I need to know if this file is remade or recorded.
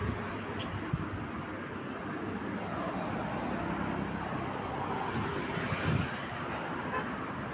recorded